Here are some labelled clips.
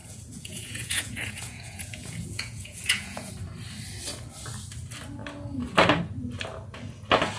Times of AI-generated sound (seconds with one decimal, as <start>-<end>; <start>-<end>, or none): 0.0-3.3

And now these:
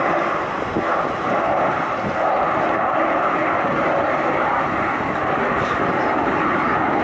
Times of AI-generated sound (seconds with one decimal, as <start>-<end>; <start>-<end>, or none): none

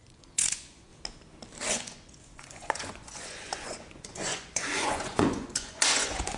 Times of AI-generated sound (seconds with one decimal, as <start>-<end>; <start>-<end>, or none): 0.0-0.9; 1.7-6.4

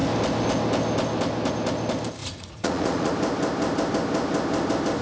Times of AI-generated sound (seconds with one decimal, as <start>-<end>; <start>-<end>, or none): 2.2-3.1

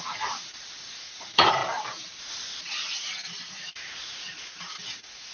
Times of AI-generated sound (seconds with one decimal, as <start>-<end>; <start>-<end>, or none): 0.0-1.6; 3.5-5.3